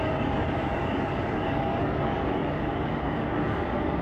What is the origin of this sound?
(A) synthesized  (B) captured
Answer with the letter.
A